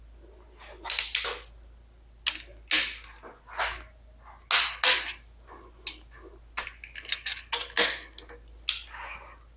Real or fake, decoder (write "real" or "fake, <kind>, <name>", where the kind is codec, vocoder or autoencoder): real